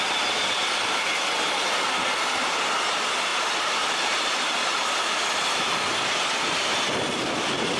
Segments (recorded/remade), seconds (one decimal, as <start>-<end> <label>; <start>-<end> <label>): 0.0-3.3 recorded; 3.3-4.2 remade; 4.2-7.8 recorded